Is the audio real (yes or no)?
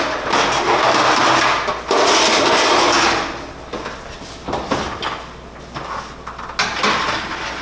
yes